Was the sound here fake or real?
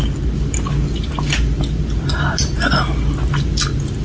real